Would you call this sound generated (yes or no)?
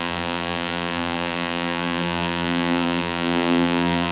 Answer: yes